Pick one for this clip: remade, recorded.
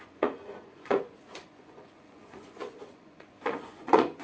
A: remade